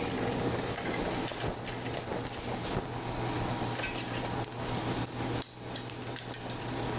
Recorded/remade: recorded